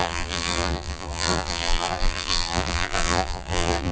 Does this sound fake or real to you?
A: fake